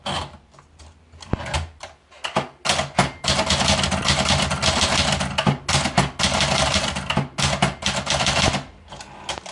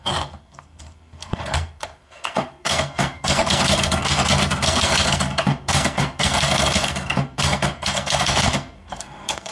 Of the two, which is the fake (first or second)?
second